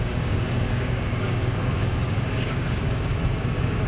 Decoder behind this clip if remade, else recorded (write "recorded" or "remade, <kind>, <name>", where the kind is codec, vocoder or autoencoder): remade, codec, DAC